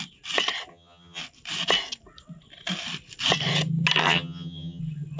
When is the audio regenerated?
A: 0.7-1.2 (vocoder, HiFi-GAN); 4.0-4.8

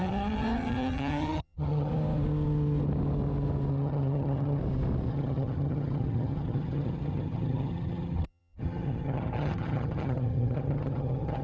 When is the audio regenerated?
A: 0.0-1.9 (vocoder, HiFi-GAN); 3.7-4.6; 5.1-11.4

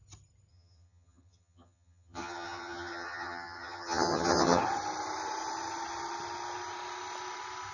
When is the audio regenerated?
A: 0.5-4.6 (vocoder, HiFi-GAN)

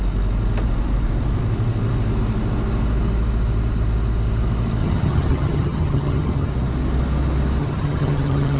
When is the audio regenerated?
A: 4.8-6.5 (vocoder, HiFi-GAN); 7.6-8.6